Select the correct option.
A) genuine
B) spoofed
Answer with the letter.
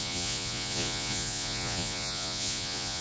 B